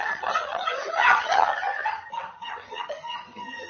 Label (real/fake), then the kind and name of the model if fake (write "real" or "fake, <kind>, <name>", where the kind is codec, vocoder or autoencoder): fake, vocoder, HiFi-GAN